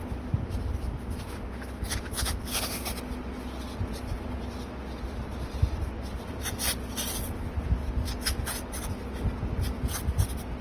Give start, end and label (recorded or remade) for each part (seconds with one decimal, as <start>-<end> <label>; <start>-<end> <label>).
0.0-10.6 recorded